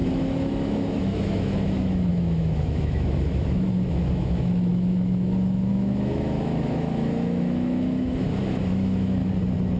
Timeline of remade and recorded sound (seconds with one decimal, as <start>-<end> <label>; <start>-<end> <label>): 0.0-9.2 remade; 9.2-9.8 recorded

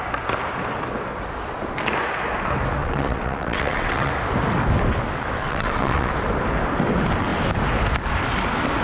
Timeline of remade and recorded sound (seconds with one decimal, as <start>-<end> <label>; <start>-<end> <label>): 0.0-2.8 recorded; 2.8-4.1 remade; 4.1-5.4 recorded; 5.4-6.1 remade; 6.1-8.8 recorded

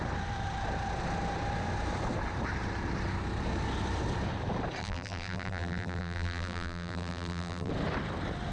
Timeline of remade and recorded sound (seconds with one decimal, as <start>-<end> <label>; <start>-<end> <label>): 0.0-4.8 recorded; 4.8-7.7 remade; 7.7-8.5 recorded

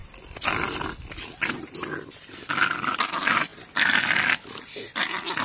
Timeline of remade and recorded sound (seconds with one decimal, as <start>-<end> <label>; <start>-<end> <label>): 0.0-5.4 recorded

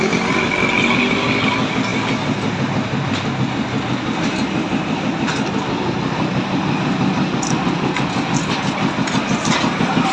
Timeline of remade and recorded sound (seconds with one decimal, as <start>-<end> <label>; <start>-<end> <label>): 0.0-10.1 recorded

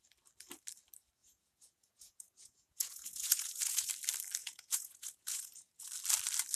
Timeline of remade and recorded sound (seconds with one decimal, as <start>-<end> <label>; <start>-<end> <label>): 0.0-1.2 recorded; 1.2-3.9 remade; 3.9-4.4 recorded; 4.4-5.9 remade; 5.9-6.6 recorded

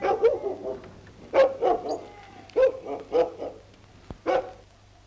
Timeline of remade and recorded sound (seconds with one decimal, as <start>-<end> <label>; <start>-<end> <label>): 0.0-5.1 recorded

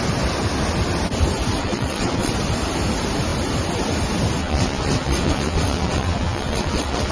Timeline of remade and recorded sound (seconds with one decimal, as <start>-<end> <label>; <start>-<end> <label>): 0.0-1.6 recorded; 1.6-2.3 remade; 2.3-4.4 recorded; 4.4-7.1 remade